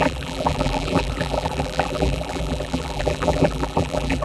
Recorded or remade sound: remade